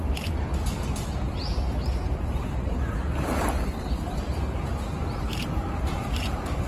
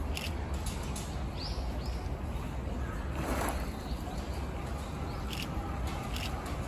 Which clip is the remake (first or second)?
first